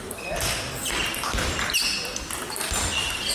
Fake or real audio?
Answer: real